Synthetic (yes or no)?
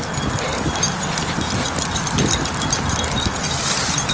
no